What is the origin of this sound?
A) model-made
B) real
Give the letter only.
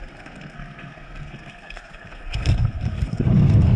A